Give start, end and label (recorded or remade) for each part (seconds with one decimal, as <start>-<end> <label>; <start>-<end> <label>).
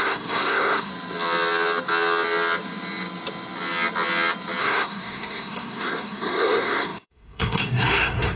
0.0-0.9 remade; 0.9-4.6 recorded; 4.6-8.4 remade